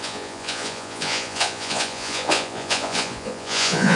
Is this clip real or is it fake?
fake